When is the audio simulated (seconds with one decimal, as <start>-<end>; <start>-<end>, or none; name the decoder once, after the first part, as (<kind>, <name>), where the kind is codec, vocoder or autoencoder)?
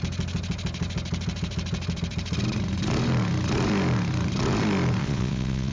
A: 5.0-5.7 (vocoder, WaveNeXt)